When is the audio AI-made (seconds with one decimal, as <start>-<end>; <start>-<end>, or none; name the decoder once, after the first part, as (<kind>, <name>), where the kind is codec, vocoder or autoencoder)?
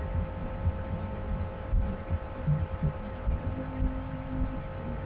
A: 0.4-3.5 (vocoder, BigVGAN v2)